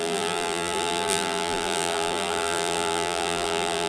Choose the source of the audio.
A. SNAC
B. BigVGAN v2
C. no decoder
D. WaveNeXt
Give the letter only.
B